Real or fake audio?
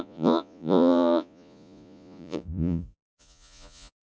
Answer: fake